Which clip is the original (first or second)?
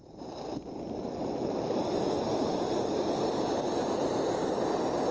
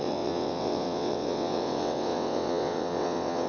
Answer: first